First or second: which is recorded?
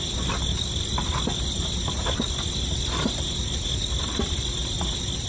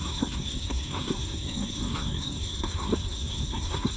first